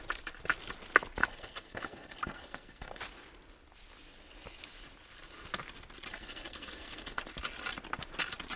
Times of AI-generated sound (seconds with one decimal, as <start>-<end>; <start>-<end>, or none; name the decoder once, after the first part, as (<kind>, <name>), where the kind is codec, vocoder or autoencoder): 1.2-3.0 (codec, SNAC); 6.1-7.2